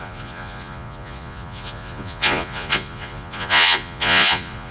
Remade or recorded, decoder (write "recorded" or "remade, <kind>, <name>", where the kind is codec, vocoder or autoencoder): remade, vocoder, Vocos